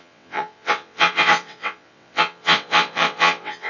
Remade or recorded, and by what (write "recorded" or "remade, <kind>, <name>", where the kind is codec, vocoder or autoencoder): remade, vocoder, WaveNeXt